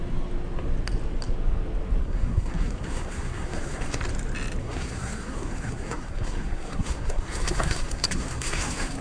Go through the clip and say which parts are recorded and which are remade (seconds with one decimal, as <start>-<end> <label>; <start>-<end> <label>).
0.0-2.0 recorded; 2.0-4.0 remade; 4.0-4.6 recorded; 4.6-9.0 remade

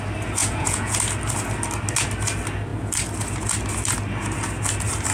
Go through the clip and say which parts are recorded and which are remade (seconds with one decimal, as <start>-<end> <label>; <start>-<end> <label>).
0.0-0.4 recorded; 0.4-1.0 remade; 1.0-5.1 recorded